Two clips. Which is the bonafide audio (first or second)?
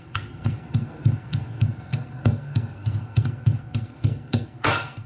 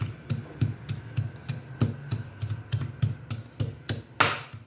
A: second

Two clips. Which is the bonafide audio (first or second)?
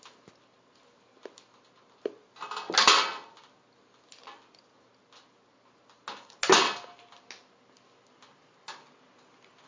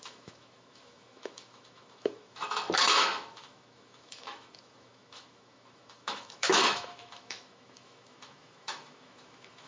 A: first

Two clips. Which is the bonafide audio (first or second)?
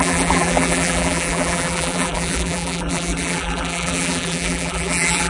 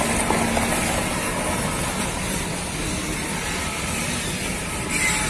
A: second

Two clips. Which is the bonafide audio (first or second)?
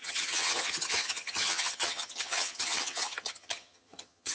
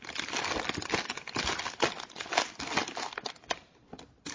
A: second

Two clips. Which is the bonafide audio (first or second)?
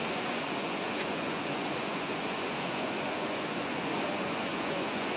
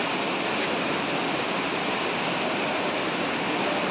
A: second